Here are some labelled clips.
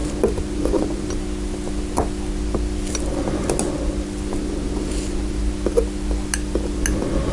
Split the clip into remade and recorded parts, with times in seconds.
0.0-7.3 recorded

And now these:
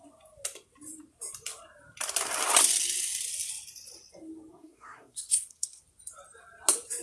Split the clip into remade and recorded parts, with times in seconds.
0.0-4.5 recorded; 4.5-5.8 remade; 5.8-7.0 recorded

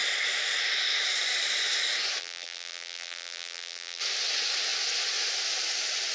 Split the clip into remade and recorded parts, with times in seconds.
0.0-2.2 recorded; 2.2-4.0 remade; 4.0-6.1 recorded

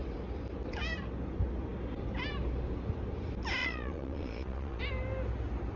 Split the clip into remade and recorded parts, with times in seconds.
0.0-3.6 recorded; 3.6-4.8 remade; 4.8-5.8 recorded

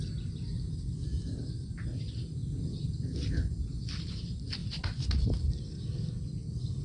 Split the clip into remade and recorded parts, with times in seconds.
0.0-6.8 recorded

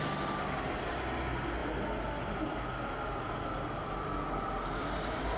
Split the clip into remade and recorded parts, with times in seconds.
0.0-5.4 recorded

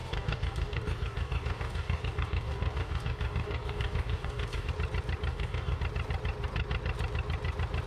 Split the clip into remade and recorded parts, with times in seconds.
0.0-4.7 remade; 4.7-5.3 recorded; 5.3-5.8 remade; 5.8-7.9 recorded